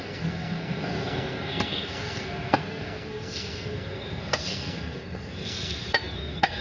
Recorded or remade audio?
remade